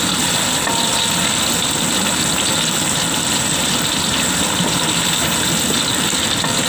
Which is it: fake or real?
real